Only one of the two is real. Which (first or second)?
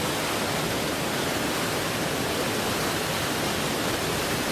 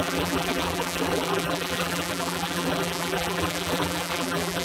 first